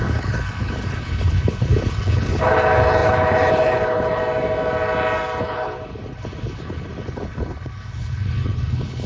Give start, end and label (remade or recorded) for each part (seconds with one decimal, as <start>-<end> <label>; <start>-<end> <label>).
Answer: 0.0-4.2 remade; 4.2-5.4 recorded; 5.4-9.1 remade